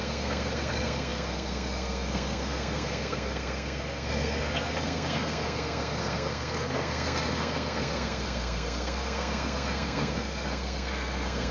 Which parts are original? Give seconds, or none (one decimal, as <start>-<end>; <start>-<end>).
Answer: none